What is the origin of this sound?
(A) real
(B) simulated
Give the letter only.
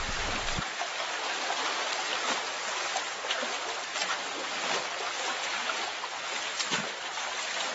A